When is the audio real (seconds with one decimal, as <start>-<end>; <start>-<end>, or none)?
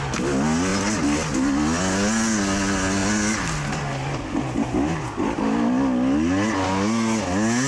0.0-7.7